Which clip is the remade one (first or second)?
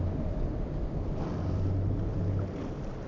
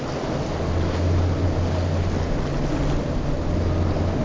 first